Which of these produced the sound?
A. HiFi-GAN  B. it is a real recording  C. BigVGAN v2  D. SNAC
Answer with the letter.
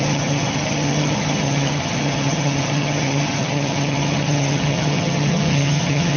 A